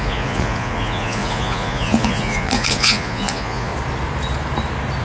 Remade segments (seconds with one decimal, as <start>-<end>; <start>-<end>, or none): 0.0-3.7

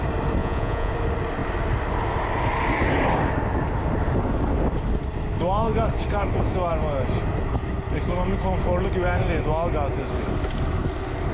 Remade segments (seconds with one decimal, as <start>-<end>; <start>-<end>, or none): 0.4-0.9

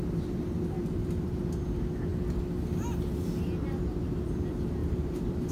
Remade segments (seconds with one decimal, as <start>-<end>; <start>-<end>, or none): 0.8-1.4; 4.8-5.5